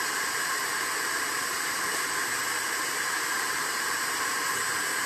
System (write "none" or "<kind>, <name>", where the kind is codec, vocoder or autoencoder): vocoder, BigVGAN v2